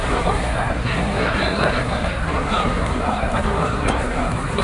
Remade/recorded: remade